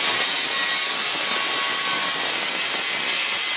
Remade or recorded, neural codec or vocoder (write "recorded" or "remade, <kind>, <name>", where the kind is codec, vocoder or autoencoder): recorded